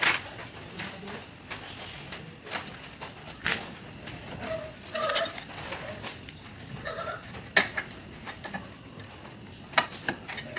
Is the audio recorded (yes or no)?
yes